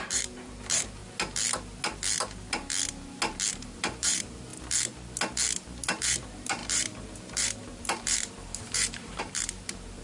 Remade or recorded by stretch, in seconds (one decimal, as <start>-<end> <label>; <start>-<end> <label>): 0.0-1.0 remade; 1.0-3.5 recorded; 3.5-4.5 remade; 4.5-6.0 recorded; 6.0-10.0 remade